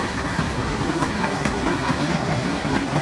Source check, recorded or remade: remade